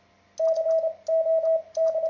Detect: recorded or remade recorded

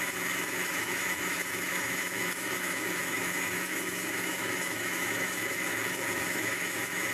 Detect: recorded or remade remade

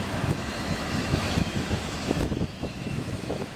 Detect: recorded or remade remade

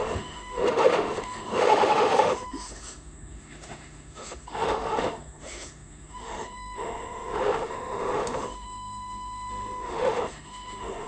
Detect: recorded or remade remade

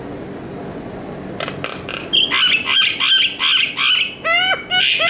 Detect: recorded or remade recorded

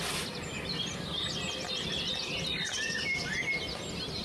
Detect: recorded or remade recorded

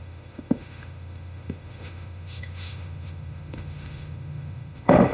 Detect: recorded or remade remade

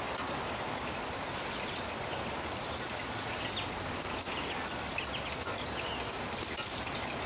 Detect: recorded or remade recorded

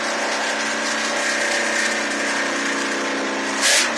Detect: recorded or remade recorded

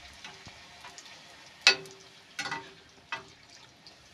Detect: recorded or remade recorded